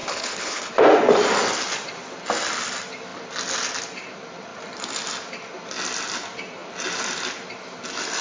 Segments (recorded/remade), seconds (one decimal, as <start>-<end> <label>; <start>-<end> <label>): 0.0-0.7 remade; 0.7-8.2 recorded